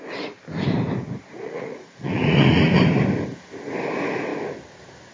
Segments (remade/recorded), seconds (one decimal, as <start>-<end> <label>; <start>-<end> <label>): 0.0-1.3 recorded; 1.3-2.8 remade; 2.8-5.1 recorded